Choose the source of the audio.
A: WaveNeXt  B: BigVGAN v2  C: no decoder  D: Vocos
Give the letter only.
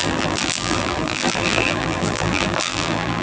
B